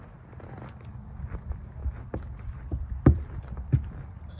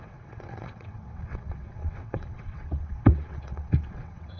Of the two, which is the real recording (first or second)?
first